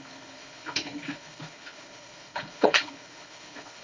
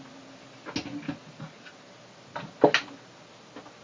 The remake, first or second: first